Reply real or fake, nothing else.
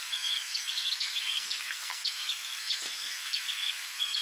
fake